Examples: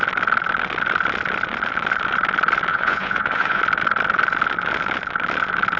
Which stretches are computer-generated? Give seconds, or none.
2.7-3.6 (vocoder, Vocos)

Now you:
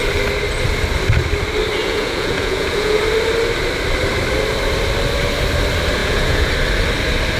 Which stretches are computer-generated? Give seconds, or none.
1.8-3.0 (vocoder, Vocos); 6.0-6.5